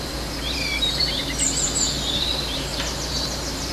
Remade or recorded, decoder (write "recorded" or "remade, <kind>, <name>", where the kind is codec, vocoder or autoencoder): remade, vocoder, BigVGAN v2